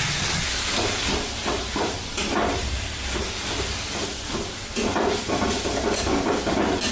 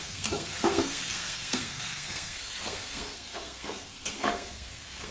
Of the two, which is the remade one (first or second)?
second